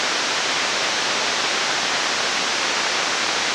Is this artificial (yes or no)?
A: no